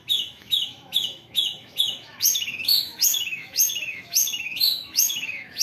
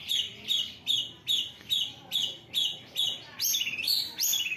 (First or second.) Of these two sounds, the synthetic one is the first